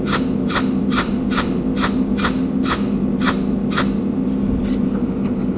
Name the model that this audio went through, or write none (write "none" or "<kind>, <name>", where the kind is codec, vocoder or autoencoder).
none